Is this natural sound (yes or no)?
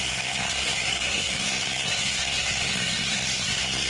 no